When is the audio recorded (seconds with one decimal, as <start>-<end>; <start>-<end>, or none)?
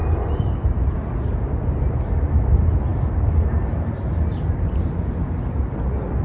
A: 0.0-6.2